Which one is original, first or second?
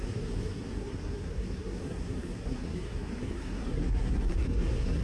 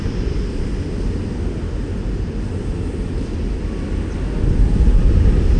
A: second